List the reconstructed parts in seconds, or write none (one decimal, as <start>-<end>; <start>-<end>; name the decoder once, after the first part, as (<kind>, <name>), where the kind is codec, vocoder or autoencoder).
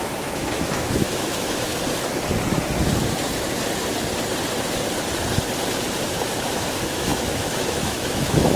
0.0-1.7 (autoencoder, DAC-VAE); 6.2-8.6